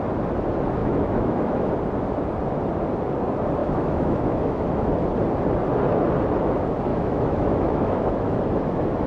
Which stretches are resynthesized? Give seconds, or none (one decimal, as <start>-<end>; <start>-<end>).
0.8-1.7; 3.6-4.9; 6.9-8.4